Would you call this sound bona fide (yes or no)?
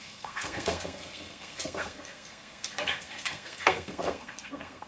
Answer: no